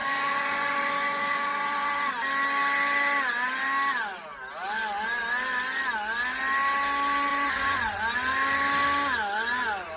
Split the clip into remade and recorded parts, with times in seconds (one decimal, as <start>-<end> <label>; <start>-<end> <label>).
0.0-2.1 remade; 2.1-7.3 recorded; 7.3-8.0 remade; 8.0-10.0 recorded